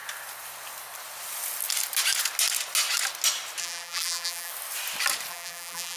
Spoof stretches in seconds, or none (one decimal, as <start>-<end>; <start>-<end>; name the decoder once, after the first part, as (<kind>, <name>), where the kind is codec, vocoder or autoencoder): 3.6-4.5 (vocoder, BigVGAN v2); 5.3-6.0